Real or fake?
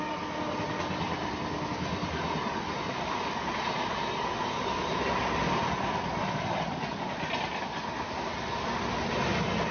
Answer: real